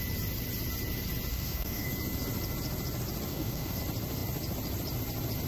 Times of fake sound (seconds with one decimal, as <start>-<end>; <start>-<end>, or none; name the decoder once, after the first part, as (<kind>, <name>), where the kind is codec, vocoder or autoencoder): 1.3-1.9 (codec, DAC); 3.3-3.8